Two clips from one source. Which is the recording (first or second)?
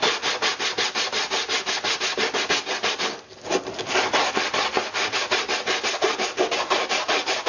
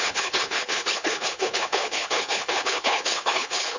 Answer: first